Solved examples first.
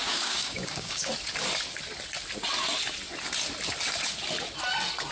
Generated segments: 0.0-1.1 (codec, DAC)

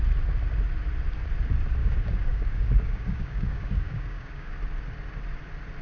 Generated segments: 1.8-4.5 (codec, DAC)

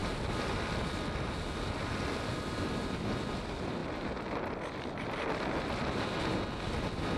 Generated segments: none

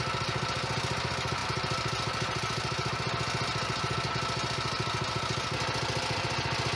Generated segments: none